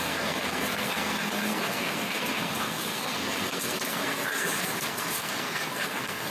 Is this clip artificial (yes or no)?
yes